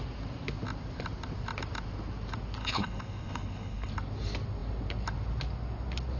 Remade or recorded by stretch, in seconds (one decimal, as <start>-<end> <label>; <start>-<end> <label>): 0.0-2.6 recorded; 2.6-3.9 remade; 3.9-6.2 recorded